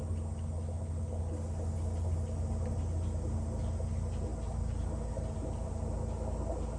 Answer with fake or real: real